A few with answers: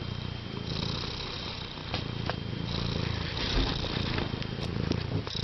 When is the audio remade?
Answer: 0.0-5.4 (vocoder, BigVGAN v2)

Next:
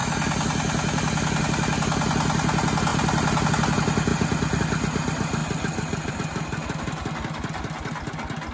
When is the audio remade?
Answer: 2.9-3.5 (vocoder, BigVGAN v2); 4.1-4.6

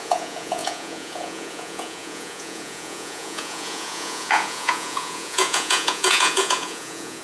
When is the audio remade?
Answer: 0.0-7.2 (vocoder, Vocos)

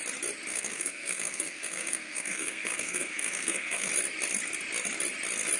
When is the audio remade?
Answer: 0.5-3.9 (codec, SNAC)

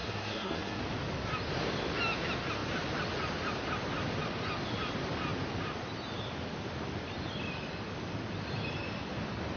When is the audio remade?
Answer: 0.0-0.8 (codec, SNAC)

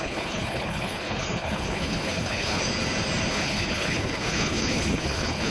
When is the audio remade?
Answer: 0.0-2.6 (codec, HILCodec); 3.3-5.5

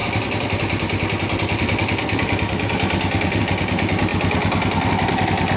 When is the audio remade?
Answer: 3.4-5.6 (vocoder, BigVGAN v2)

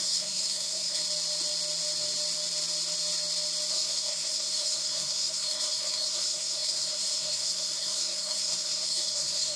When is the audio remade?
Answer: 0.0-1.0 (codec, SNAC); 3.7-9.6